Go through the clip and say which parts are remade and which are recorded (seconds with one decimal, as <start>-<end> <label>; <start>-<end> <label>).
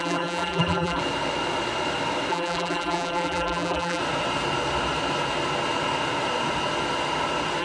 0.0-1.0 remade; 1.0-2.3 recorded; 2.3-4.0 remade; 4.0-7.6 recorded